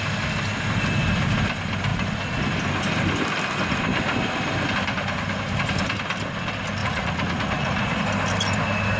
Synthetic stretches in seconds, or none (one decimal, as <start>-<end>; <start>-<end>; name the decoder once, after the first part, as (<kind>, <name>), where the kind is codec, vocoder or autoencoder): 6.8-8.0 (vocoder, Vocos)